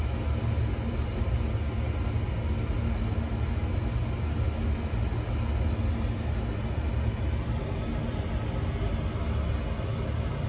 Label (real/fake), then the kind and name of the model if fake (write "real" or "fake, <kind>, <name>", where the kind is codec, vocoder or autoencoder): real